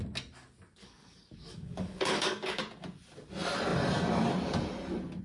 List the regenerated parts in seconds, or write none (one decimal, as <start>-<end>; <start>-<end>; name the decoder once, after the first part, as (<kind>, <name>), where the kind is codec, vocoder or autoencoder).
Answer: 0.8-2.6 (codec, DAC)